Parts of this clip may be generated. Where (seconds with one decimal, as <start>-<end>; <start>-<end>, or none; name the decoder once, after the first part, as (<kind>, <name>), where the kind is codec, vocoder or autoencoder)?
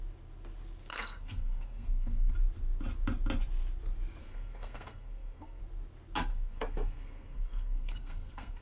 0.9-2.3 (codec, SNAC); 4.2-5.6; 6.3-8.6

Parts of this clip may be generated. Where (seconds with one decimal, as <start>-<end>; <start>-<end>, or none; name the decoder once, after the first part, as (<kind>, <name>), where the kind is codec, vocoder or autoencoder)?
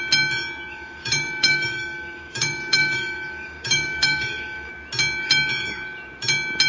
0.7-4.7 (autoencoder, DAC-VAE)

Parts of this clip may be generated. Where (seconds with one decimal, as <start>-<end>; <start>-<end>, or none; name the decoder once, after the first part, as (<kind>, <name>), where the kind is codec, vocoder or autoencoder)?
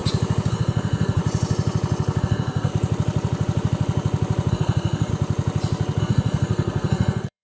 0.5-1.2 (codec, SNAC); 2.2-2.7; 4.5-5.1; 6.0-7.4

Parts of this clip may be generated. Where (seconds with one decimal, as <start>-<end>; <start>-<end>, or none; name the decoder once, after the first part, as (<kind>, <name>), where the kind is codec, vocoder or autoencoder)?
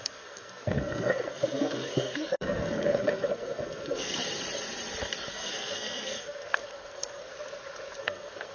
0.0-4.2 (codec, SNAC); 5.3-7.3; 8.0-8.5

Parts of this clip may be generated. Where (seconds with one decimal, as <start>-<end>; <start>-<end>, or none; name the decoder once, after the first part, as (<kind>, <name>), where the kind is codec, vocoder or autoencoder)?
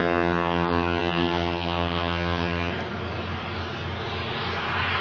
0.0-2.7 (vocoder, HiFi-GAN)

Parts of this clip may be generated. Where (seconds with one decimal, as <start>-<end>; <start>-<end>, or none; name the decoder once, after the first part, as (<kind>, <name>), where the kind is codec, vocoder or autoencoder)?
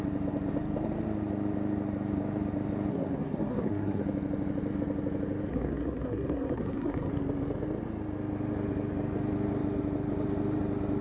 2.9-4.0 (codec, SNAC); 5.5-7.1